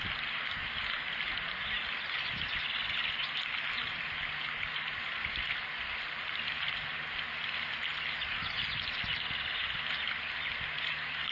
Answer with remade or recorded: recorded